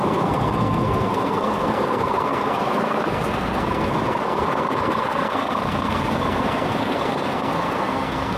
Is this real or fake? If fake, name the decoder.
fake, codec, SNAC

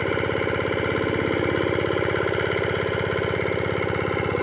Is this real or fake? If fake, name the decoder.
real